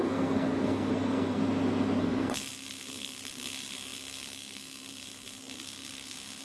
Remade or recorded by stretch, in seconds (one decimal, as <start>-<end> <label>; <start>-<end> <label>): 0.0-1.4 remade; 1.4-2.0 recorded; 2.0-6.4 remade